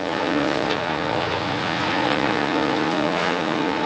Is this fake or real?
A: fake